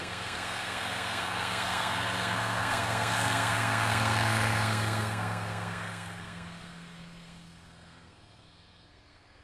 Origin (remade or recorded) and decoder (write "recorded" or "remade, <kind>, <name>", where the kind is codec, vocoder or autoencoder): remade, codec, SNAC